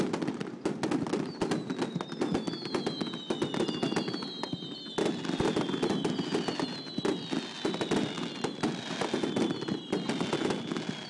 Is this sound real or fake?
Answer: real